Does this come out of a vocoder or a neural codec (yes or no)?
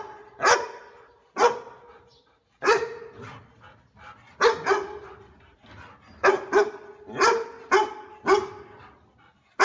no